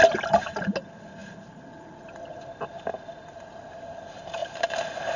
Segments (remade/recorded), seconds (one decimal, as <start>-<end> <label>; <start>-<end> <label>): 0.0-5.2 recorded